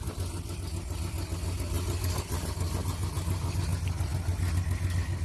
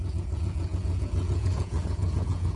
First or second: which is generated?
second